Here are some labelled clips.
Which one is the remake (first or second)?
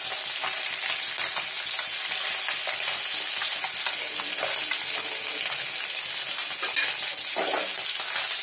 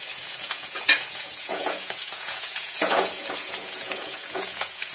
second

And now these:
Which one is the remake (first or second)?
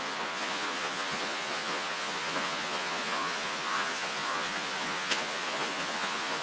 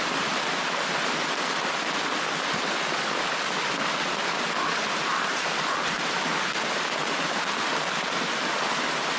first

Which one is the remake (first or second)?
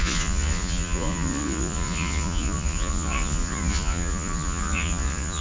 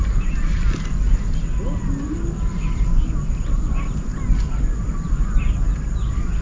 first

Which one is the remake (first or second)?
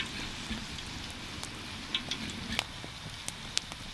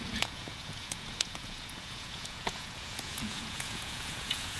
second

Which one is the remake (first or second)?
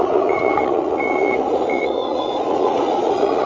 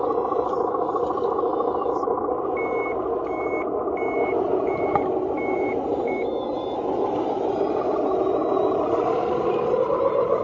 first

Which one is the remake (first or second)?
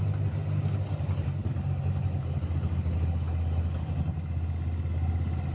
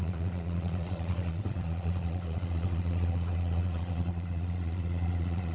second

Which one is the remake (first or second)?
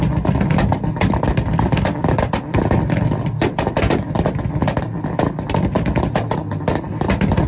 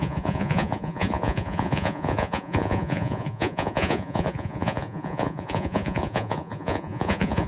second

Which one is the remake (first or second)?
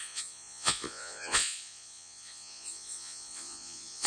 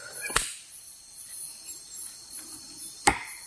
first